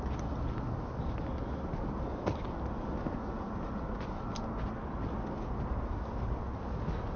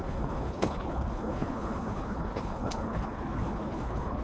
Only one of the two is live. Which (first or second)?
first